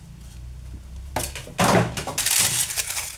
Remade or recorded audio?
recorded